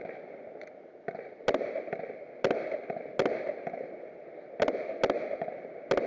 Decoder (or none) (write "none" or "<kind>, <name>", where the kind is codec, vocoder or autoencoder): none